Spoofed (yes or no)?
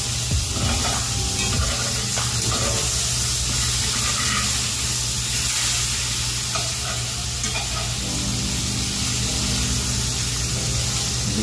no